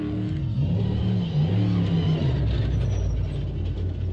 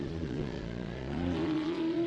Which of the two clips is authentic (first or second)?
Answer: first